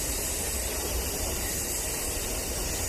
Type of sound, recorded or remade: recorded